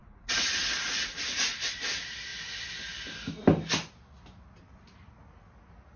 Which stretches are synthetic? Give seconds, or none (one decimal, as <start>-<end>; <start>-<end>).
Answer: 0.0-1.6